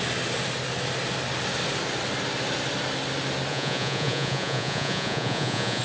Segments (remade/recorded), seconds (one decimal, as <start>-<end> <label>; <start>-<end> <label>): 0.0-3.5 recorded; 3.5-5.8 remade